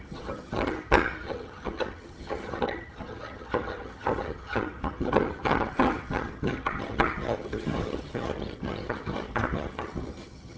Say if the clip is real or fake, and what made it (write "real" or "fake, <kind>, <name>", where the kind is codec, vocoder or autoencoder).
fake, vocoder, HiFi-GAN